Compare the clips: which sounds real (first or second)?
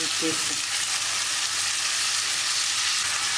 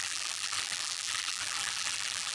first